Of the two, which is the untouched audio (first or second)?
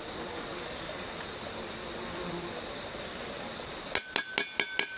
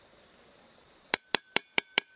first